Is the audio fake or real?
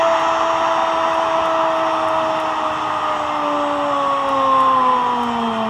real